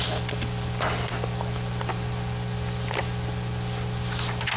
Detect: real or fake real